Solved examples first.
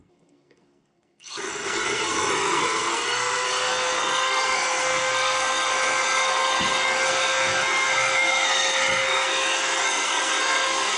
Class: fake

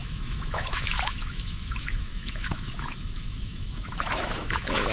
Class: fake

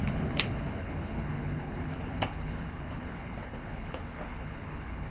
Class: fake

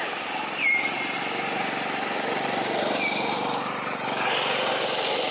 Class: real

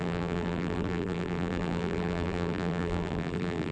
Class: fake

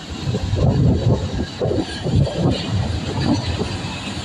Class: fake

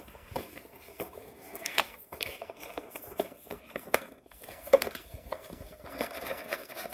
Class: fake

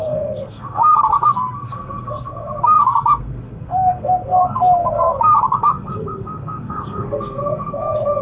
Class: fake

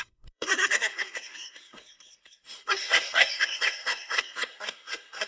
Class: fake